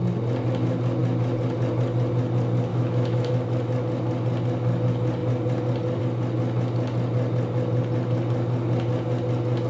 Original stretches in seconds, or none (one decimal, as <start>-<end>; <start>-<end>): 0.0-2.7; 3.3-9.7